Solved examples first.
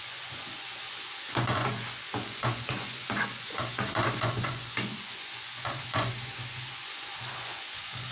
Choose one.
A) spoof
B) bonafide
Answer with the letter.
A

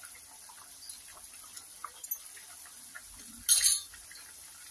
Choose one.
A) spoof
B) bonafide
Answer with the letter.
B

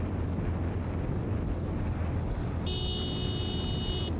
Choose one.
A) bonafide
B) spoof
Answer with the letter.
A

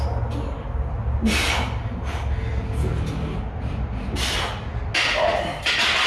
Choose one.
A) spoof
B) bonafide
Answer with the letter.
B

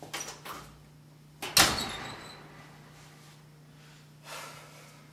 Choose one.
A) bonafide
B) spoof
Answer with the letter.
A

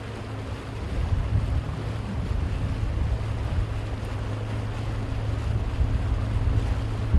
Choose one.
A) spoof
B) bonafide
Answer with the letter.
B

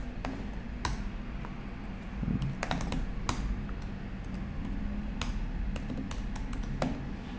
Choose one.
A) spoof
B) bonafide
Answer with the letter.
B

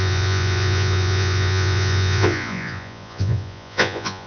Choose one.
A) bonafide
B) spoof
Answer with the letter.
B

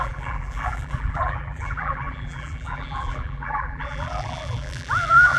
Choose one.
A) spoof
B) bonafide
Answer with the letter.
A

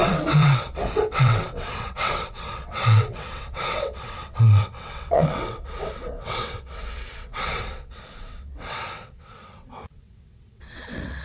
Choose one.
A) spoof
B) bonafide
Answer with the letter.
A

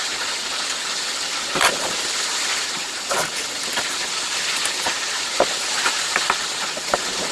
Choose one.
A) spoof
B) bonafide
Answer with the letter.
A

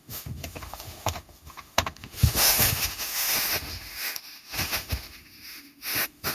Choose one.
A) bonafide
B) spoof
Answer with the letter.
B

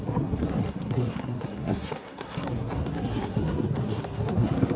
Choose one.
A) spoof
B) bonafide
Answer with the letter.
A